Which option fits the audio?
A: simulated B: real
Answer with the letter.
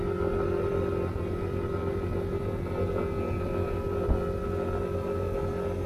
B